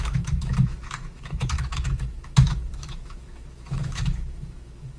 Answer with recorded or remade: remade